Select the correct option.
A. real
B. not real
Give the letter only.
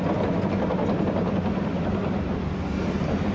A